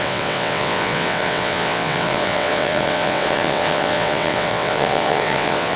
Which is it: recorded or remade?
remade